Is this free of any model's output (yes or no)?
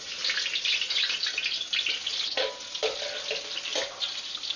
yes